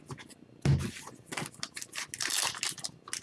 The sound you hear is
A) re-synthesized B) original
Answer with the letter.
B